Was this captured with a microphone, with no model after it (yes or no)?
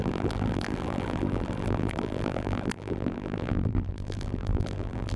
no